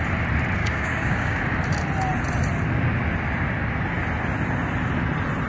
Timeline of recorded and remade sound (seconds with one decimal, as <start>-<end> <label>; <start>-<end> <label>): 0.0-0.6 recorded; 0.6-1.4 remade; 1.4-5.5 recorded